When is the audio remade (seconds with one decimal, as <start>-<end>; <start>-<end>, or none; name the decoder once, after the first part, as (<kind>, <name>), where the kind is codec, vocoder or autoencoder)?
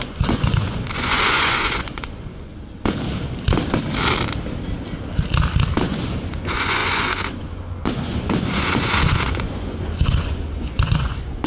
0.0-2.5 (vocoder, Vocos); 5.8-11.5